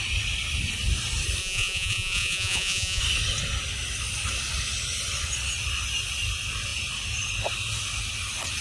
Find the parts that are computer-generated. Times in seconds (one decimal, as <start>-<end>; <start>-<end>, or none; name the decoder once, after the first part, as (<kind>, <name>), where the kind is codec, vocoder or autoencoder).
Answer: 1.4-3.0 (vocoder, Vocos)